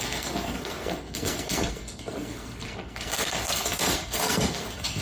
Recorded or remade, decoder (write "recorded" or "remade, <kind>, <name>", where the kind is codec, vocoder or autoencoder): remade, codec, SNAC